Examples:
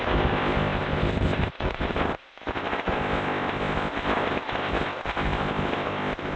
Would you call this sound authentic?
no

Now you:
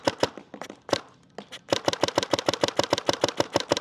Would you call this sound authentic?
yes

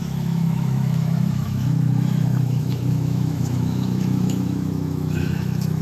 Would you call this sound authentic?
no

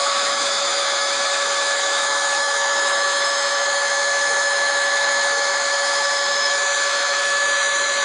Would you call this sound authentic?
no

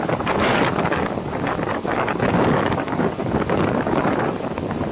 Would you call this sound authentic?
no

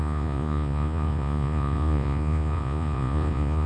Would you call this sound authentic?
no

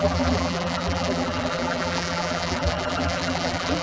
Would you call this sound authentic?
no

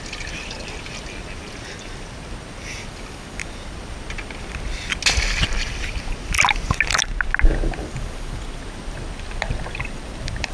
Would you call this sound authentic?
yes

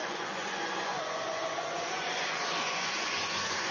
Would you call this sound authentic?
no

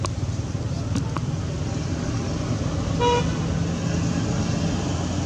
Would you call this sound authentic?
yes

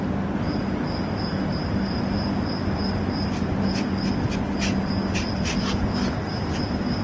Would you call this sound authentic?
yes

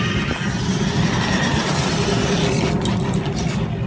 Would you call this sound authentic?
yes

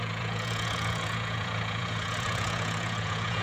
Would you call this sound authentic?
no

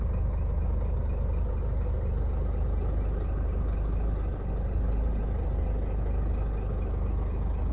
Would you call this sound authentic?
yes